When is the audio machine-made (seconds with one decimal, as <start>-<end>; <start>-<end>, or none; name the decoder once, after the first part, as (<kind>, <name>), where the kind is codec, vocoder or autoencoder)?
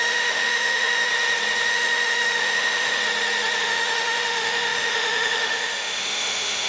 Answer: 0.0-1.1 (autoencoder, DAC-VAE); 1.7-3.0; 3.6-6.7